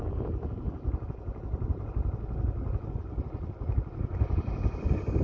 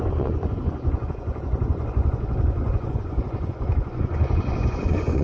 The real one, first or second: first